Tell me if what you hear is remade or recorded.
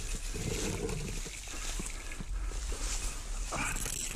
recorded